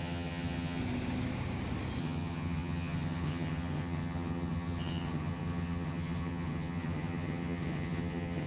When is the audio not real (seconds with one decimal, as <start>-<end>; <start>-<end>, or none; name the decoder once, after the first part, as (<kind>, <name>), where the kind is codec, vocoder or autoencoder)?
0.0-0.8 (vocoder, HiFi-GAN); 2.0-8.5